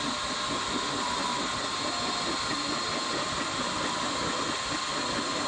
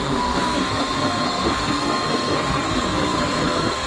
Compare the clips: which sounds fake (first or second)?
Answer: second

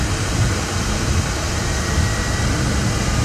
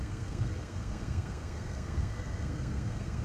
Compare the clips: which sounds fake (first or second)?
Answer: second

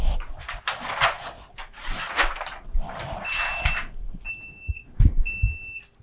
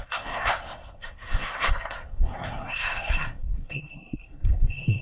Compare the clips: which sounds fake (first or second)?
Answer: second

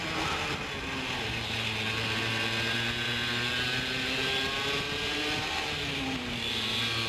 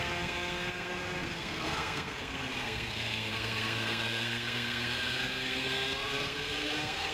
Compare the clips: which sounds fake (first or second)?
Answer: second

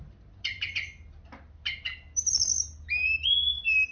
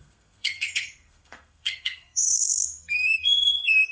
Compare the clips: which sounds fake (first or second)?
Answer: second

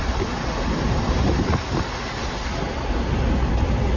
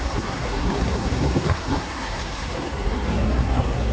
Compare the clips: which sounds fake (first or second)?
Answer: second